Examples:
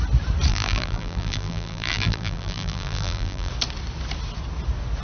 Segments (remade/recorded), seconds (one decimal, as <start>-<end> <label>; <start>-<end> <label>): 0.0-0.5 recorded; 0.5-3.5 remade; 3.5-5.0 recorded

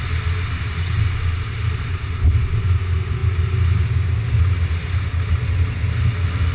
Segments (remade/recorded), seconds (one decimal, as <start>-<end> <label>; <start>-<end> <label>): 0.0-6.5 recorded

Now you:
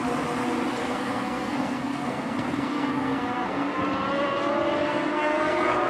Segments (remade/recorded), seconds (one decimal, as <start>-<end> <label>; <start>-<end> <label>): 0.0-0.8 recorded; 0.8-3.8 remade; 3.8-4.8 recorded; 4.8-5.9 remade

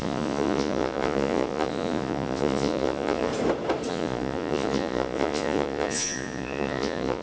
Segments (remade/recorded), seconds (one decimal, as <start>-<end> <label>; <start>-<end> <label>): 0.0-3.3 remade; 3.3-3.9 recorded; 3.9-7.2 remade

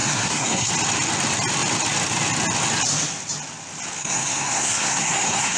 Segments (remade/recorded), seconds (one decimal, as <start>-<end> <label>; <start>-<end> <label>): 0.0-0.7 remade; 0.7-4.0 recorded; 4.0-5.6 remade

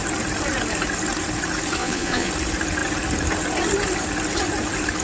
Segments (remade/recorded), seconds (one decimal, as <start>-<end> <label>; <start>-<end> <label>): 0.0-1.8 recorded; 1.8-2.3 remade; 2.3-5.0 recorded

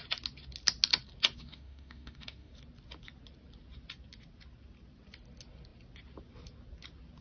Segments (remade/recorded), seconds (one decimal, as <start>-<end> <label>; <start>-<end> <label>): 0.0-1.4 recorded; 1.4-2.5 remade; 2.5-7.2 recorded

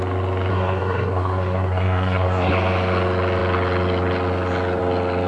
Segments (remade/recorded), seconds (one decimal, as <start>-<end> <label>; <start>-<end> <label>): 0.0-0.5 recorded; 0.5-2.5 remade; 2.5-5.3 recorded